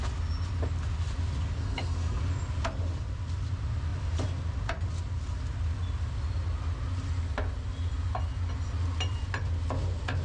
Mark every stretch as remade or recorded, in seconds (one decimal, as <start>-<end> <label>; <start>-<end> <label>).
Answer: 0.0-1.6 recorded; 1.6-2.2 remade; 2.2-10.2 recorded